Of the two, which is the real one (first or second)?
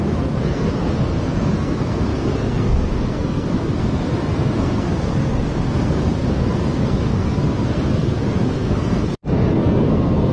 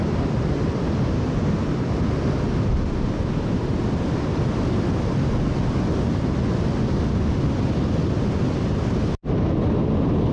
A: second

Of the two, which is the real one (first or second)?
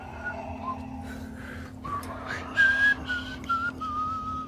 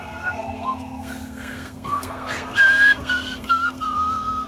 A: first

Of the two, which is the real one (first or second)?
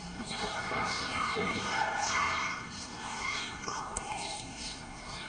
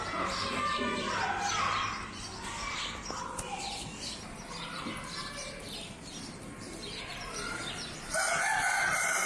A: second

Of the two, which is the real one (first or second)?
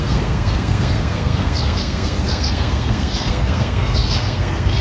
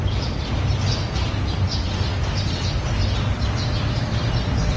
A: second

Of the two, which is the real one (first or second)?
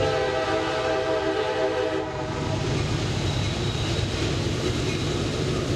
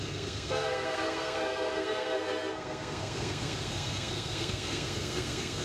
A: first